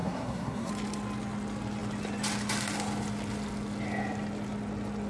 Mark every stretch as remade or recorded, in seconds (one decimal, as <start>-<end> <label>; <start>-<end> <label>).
0.0-0.7 remade; 0.7-5.1 recorded